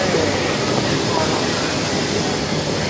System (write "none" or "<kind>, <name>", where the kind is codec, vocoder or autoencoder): none